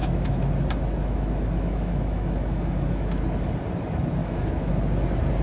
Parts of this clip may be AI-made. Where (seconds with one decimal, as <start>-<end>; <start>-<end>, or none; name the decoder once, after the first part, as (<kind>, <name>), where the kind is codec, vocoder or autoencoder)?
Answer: 0.0-0.5 (autoencoder, DAC-VAE); 1.0-3.2; 4.2-4.7